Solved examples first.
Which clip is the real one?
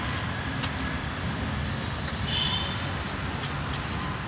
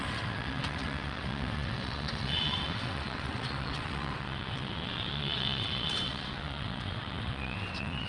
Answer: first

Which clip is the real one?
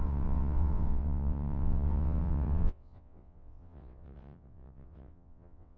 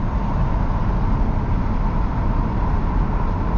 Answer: second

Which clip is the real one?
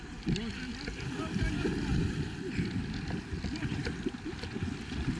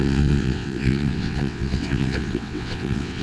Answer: first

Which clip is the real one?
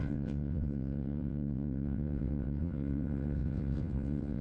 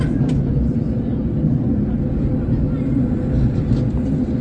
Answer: second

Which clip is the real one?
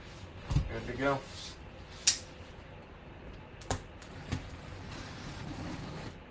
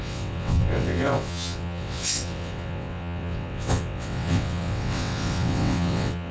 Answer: first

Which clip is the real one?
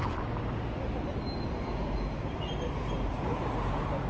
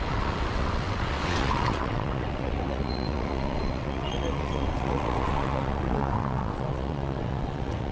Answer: first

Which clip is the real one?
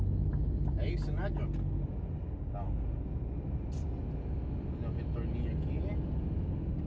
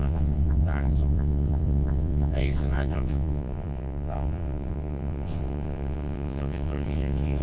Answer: first